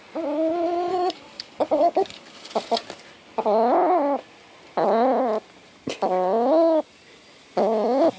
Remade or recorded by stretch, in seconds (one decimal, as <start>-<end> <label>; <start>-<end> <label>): 0.0-0.9 recorded; 0.9-2.5 remade; 2.5-8.2 recorded